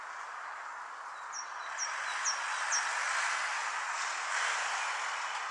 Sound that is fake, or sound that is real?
real